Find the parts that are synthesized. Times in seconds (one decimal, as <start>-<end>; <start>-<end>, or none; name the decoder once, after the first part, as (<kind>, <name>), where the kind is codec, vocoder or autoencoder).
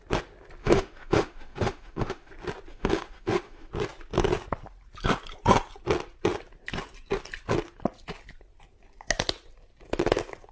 0.6-2.3 (autoencoder, DAC-VAE); 2.7-3.7